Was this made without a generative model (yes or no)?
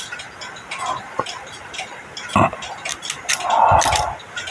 yes